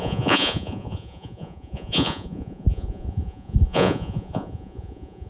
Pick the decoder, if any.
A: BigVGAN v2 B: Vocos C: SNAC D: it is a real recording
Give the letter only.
B